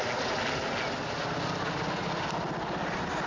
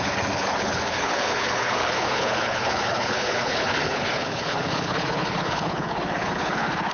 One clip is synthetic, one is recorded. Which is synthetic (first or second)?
second